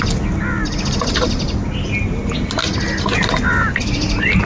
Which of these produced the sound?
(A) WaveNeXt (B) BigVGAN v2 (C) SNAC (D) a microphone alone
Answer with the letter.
D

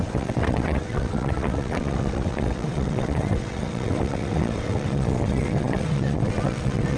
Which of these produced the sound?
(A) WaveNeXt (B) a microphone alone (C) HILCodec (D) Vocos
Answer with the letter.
A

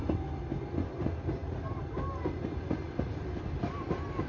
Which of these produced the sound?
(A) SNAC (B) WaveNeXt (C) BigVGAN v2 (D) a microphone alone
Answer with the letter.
D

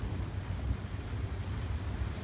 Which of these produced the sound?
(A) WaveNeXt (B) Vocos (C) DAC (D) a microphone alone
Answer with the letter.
D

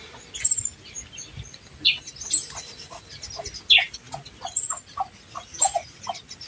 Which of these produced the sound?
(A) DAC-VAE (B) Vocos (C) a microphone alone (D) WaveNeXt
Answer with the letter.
C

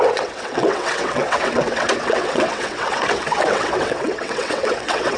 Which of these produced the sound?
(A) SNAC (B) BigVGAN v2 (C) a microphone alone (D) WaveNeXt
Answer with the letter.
D